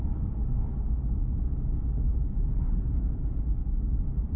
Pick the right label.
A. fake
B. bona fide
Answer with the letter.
B